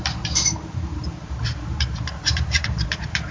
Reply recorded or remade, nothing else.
remade